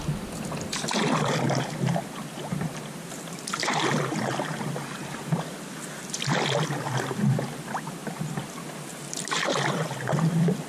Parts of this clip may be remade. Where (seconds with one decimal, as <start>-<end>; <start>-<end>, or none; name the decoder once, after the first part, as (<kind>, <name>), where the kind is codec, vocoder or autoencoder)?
2.5-3.1 (vocoder, BigVGAN v2); 3.6-5.0